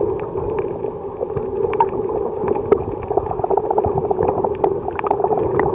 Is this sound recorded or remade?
recorded